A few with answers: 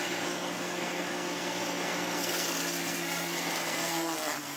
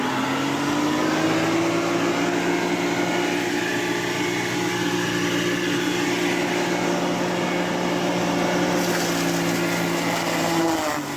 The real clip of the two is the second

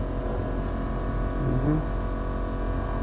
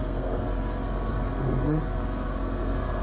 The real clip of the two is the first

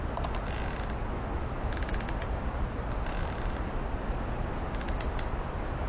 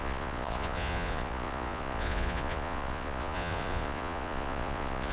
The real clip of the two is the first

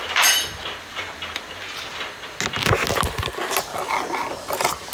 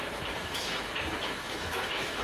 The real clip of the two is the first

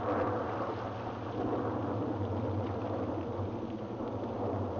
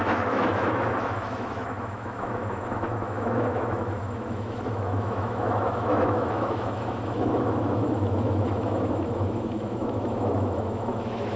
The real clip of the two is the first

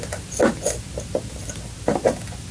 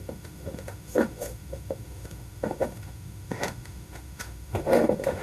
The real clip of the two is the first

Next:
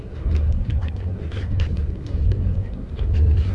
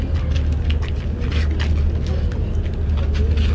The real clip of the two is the second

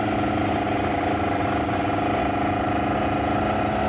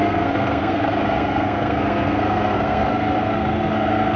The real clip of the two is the first